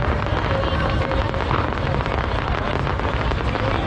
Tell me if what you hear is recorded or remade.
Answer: recorded